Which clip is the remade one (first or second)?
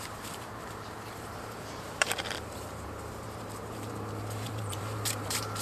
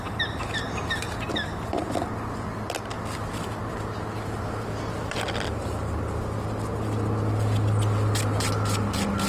first